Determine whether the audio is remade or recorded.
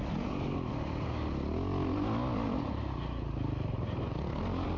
recorded